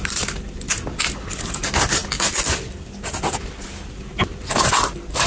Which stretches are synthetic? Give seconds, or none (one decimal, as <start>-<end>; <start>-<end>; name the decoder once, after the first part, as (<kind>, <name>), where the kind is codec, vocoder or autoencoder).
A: none